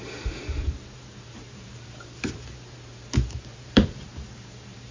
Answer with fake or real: fake